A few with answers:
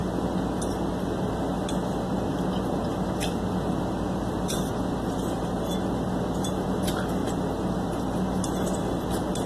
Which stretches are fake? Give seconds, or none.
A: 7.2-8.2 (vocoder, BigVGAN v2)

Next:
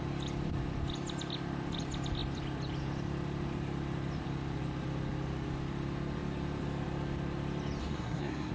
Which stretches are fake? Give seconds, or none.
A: 7.8-8.5 (codec, SNAC)

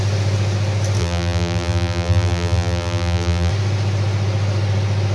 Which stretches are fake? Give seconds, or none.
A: 1.0-3.5 (vocoder, BigVGAN v2)

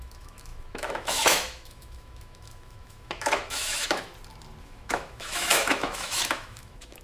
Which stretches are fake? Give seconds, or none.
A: 0.0-4.1 (autoencoder, DAC-VAE); 4.6-7.0

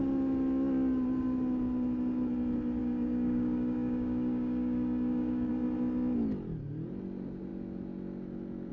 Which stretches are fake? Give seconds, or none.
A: 2.8-5.5 (codec, DAC)

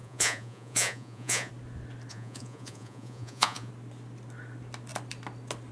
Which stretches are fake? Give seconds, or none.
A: 0.0-1.5 (vocoder, Vocos); 2.1-3.7

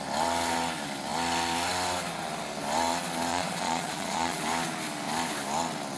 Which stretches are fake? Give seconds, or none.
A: 3.3-4.4 (vocoder, Vocos)

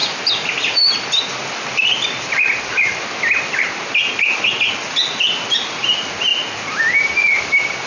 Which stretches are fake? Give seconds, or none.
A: none